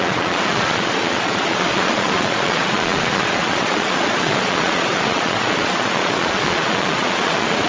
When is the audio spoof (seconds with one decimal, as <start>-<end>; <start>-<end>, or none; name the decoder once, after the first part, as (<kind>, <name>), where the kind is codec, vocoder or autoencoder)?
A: 0.0-7.7 (vocoder, Vocos)

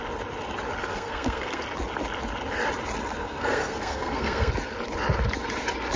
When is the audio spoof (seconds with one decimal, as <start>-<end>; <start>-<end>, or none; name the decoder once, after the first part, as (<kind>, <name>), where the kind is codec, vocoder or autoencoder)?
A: 0.8-1.6 (codec, SNAC); 3.2-4.5

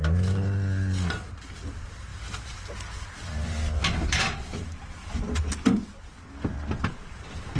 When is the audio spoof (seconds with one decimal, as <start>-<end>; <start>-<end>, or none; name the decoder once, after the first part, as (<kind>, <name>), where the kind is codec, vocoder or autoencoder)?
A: 2.1-5.4 (vocoder, BigVGAN v2)